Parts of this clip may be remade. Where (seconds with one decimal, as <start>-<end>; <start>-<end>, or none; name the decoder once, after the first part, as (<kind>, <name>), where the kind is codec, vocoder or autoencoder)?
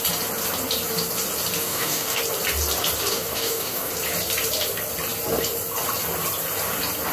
1.6-2.2 (codec, DAC); 3.1-3.9